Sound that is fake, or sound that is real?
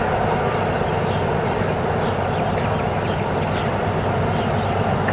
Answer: real